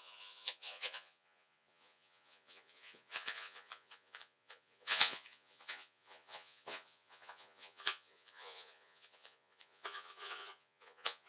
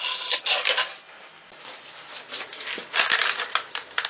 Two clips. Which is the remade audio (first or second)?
first